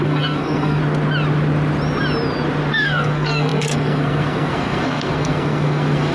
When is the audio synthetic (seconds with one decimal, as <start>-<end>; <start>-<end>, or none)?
0.0-0.8; 2.7-6.1